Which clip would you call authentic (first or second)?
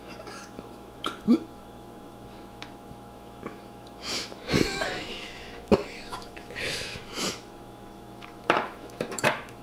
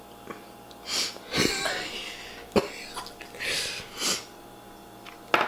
second